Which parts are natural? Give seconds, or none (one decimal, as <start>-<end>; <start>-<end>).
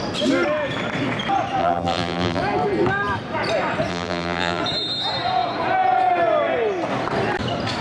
0.0-1.6; 2.4-3.9; 4.6-7.8